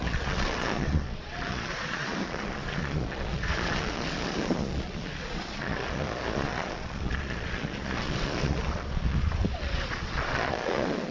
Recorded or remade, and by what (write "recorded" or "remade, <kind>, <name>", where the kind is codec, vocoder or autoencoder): remade, vocoder, Vocos